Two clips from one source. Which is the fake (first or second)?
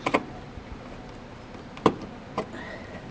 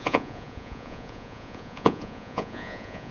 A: second